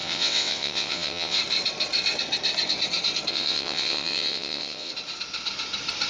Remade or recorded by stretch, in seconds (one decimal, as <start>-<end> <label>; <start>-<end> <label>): 0.0-1.4 remade; 1.4-3.3 recorded; 3.3-4.9 remade; 4.9-6.1 recorded